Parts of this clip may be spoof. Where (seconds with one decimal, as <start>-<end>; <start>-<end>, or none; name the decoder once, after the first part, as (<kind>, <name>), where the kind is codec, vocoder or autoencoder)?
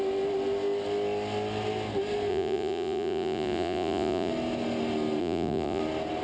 2.3-4.3 (vocoder, Vocos); 5.2-5.8